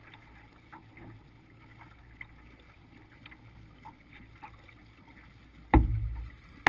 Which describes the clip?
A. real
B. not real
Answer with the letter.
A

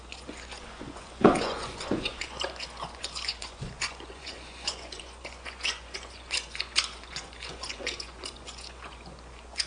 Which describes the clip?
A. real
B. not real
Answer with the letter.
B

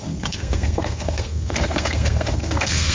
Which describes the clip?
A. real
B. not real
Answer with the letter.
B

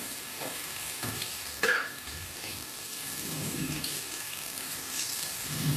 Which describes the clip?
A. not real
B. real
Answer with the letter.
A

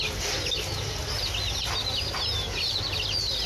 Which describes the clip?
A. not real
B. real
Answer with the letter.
B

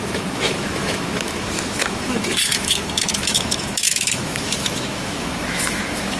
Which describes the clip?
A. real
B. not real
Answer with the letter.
B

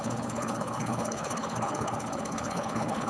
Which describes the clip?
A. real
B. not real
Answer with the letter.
B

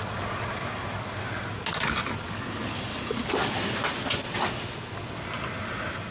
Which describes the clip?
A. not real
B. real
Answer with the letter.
B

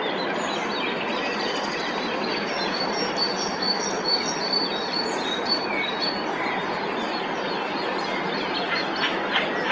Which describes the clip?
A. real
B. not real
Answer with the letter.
A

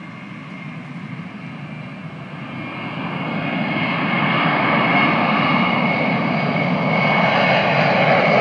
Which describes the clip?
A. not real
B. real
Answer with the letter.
B